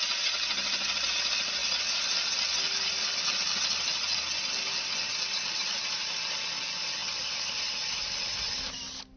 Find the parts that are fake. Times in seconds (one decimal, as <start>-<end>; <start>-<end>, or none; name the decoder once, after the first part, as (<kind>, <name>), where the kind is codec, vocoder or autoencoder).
7.0-8.3 (vocoder, BigVGAN v2)